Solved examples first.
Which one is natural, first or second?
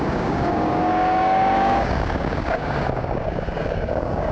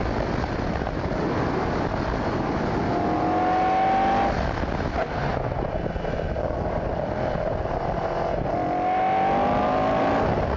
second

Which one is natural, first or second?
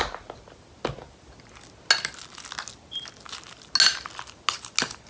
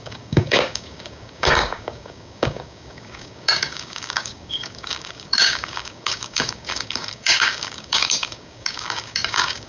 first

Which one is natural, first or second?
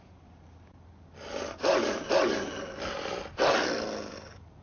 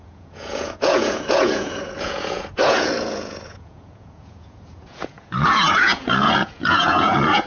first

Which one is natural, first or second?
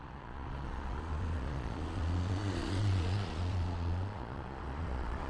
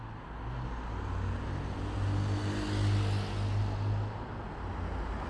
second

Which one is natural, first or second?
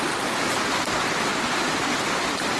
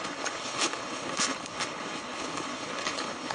first